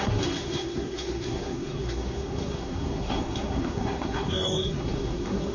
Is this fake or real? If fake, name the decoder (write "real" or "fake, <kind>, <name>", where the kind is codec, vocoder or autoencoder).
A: fake, codec, SNAC